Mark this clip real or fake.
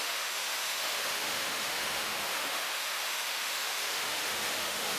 fake